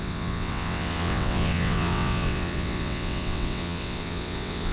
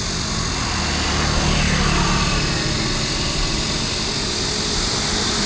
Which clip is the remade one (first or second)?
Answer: first